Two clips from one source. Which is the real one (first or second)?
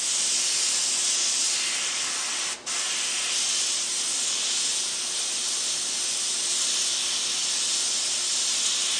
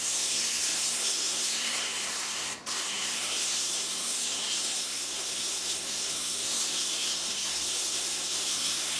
first